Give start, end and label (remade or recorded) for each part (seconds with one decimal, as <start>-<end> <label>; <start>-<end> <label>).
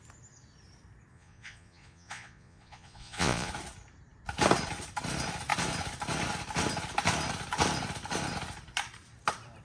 0.0-1.1 recorded; 1.1-3.5 remade; 3.5-9.6 recorded